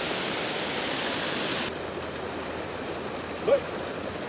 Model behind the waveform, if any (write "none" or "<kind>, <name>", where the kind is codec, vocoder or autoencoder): none